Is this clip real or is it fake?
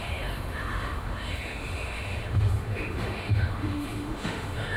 fake